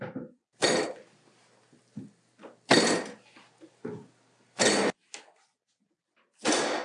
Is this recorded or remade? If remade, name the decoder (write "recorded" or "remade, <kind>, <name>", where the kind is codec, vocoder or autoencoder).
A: recorded